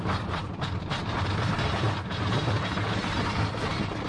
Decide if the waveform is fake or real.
fake